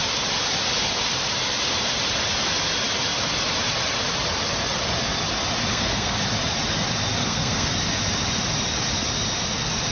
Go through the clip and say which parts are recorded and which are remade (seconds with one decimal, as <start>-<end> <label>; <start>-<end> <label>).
0.0-5.7 recorded; 5.7-6.2 remade; 6.2-7.2 recorded; 7.2-7.7 remade; 7.7-9.9 recorded

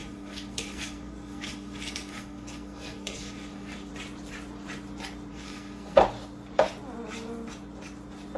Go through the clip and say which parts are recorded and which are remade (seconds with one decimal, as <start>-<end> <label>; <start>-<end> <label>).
0.0-3.9 remade; 3.9-5.3 recorded; 5.3-6.0 remade; 6.0-8.4 recorded

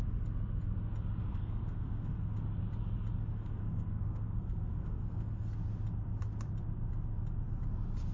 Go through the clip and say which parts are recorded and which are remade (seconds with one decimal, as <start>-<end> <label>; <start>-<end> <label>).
0.0-1.2 recorded; 1.2-2.3 remade; 2.3-3.3 recorded; 3.3-5.5 remade; 5.5-8.1 recorded

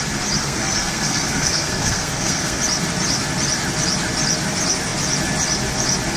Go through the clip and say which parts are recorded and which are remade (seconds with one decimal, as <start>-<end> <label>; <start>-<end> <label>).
0.0-0.4 recorded; 0.4-2.6 remade; 2.6-6.2 recorded

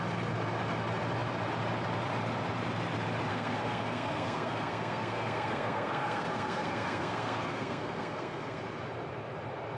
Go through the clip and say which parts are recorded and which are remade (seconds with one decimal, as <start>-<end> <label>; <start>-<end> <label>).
0.0-3.3 recorded; 3.3-8.6 remade; 8.6-9.8 recorded

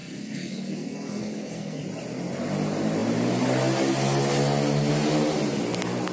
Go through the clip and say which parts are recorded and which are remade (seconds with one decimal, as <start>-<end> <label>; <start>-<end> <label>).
0.0-1.8 remade; 1.8-6.1 recorded

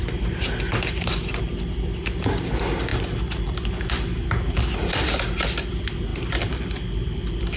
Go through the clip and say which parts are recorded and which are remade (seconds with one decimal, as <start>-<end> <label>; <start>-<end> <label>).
0.0-7.6 recorded

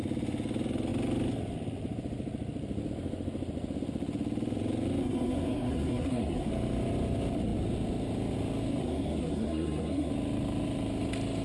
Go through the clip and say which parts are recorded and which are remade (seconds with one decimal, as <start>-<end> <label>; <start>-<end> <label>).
0.0-5.0 recorded; 5.0-6.5 remade; 6.5-8.8 recorded; 8.8-10.1 remade; 10.1-11.4 recorded